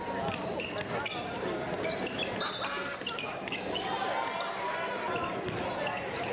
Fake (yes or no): no